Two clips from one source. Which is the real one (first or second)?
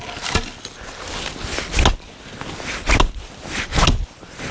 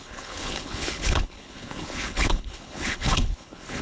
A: first